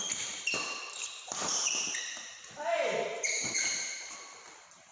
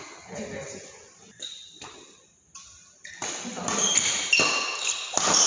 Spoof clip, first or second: first